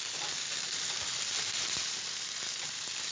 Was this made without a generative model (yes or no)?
no